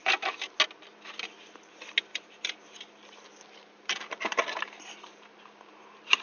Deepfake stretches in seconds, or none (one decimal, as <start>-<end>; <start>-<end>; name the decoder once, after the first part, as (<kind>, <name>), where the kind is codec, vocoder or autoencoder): 0.0-0.6 (vocoder, BigVGAN v2); 2.1-5.8